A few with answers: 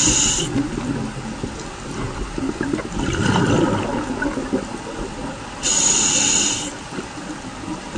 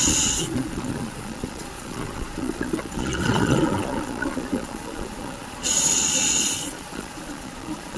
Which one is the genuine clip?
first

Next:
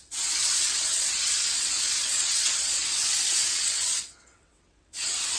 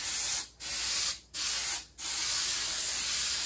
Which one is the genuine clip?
second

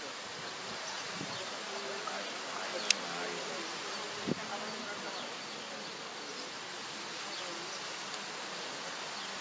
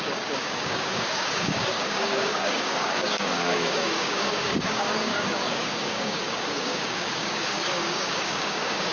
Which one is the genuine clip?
first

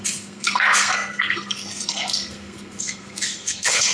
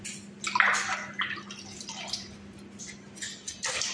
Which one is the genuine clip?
second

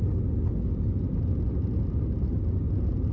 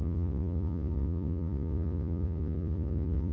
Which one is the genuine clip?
first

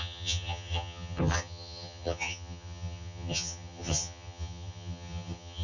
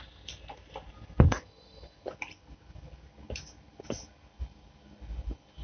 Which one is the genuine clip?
second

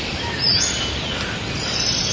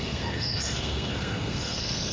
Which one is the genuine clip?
first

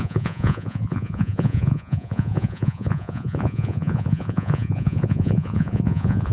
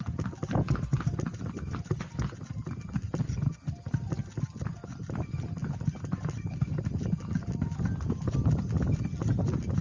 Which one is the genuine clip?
second